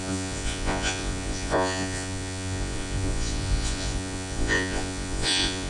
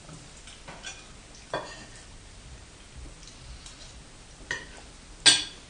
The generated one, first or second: first